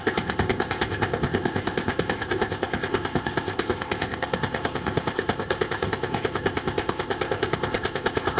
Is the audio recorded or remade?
remade